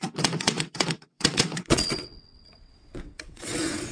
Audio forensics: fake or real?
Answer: fake